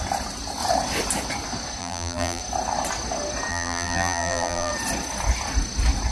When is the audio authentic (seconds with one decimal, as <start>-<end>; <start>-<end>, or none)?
0.0-1.8; 2.4-3.5; 4.7-6.1